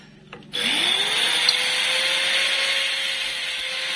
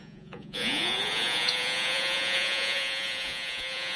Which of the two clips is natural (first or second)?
first